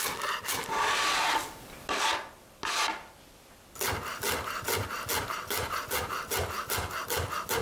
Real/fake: real